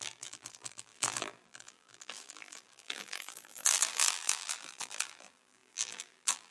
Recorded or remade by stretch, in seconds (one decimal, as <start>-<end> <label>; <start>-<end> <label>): 0.0-6.5 remade